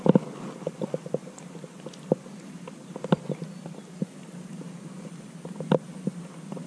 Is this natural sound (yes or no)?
yes